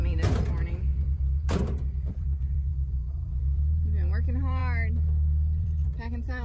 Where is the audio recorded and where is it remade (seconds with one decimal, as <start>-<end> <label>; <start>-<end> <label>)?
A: 0.0-0.9 remade; 0.9-2.1 recorded; 2.1-4.6 remade; 4.6-5.6 recorded; 5.6-6.4 remade